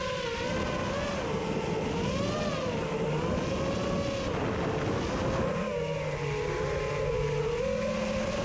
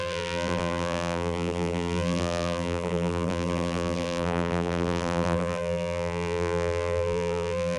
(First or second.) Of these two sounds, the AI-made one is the second